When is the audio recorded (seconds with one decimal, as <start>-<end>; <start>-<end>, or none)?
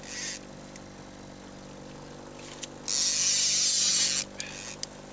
0.0-5.1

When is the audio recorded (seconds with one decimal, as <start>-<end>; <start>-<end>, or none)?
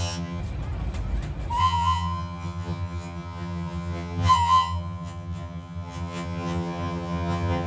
0.4-1.6